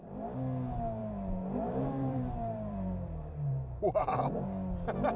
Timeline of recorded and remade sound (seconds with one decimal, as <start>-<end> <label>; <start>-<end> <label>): 0.0-1.0 recorded; 1.0-4.1 remade; 4.1-5.2 recorded